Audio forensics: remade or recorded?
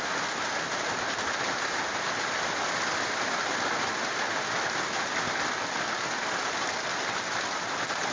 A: recorded